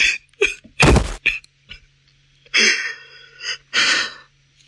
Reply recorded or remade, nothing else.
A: recorded